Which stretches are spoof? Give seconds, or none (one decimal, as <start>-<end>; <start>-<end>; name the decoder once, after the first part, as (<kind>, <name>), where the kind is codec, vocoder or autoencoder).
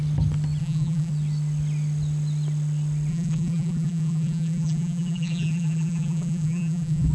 0.6-1.1 (vocoder, BigVGAN v2); 3.1-7.1